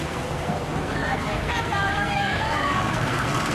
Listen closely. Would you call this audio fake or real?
fake